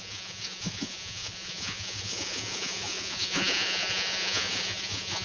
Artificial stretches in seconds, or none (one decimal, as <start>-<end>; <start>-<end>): 0.0-5.2